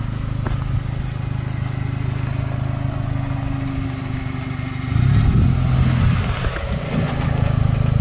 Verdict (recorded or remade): recorded